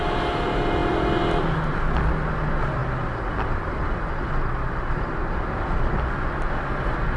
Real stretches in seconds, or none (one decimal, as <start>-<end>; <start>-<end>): 0.0-7.2